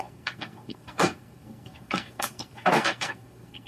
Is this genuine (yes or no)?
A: no